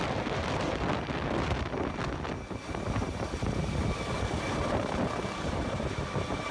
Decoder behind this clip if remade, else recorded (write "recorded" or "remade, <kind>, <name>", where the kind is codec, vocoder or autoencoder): recorded